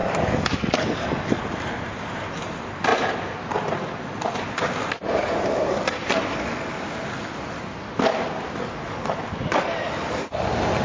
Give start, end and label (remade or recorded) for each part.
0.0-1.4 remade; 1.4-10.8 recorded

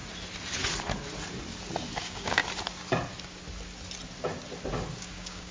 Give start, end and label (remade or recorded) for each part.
0.0-2.0 recorded; 2.0-2.4 remade; 2.4-5.0 recorded; 5.0-5.5 remade

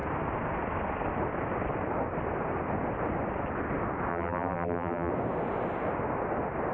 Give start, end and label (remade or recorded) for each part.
0.0-4.1 recorded; 4.1-5.1 remade; 5.1-6.7 recorded